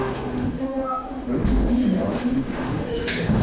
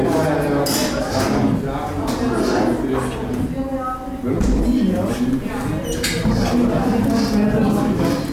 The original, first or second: second